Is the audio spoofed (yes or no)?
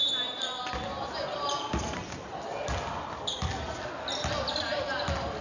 no